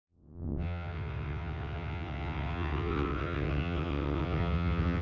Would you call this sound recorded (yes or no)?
no